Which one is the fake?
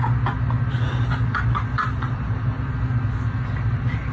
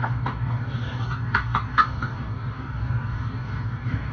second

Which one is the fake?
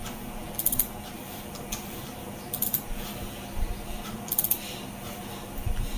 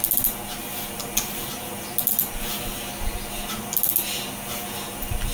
first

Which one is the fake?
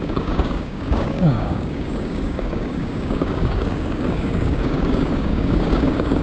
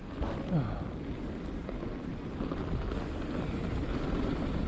first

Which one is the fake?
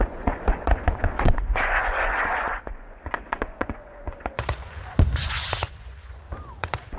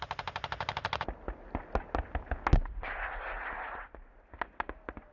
first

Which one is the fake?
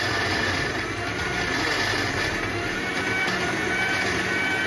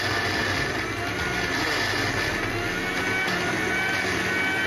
first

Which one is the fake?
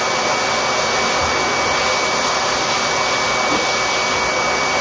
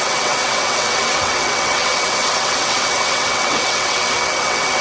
second